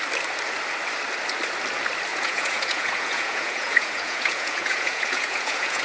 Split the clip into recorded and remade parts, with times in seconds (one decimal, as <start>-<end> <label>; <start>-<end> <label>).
0.0-2.1 recorded; 2.1-5.8 remade